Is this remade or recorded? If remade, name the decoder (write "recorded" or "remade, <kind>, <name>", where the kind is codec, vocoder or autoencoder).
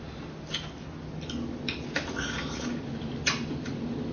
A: recorded